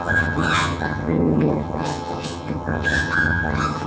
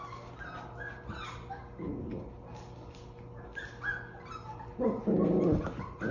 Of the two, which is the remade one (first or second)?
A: first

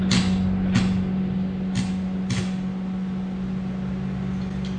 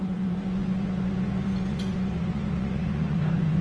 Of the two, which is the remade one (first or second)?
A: second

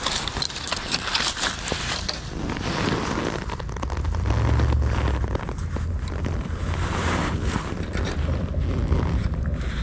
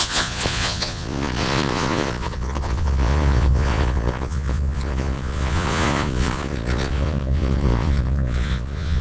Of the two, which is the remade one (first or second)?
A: second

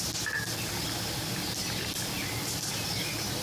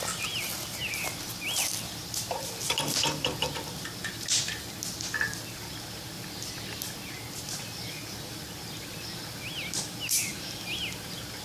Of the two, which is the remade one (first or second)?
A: first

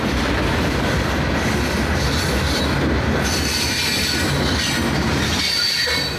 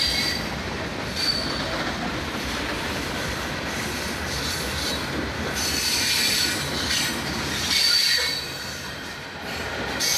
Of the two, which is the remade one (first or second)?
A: second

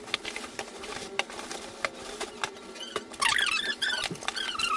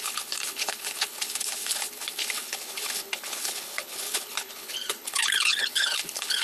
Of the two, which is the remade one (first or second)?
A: second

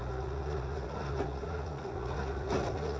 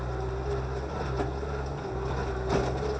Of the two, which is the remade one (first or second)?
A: first